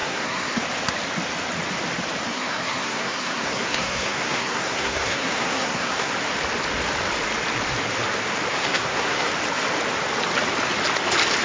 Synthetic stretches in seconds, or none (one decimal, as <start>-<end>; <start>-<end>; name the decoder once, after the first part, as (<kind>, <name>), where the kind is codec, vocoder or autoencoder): 0.0-0.6 (codec, SNAC); 2.3-6.1; 8.5-9.3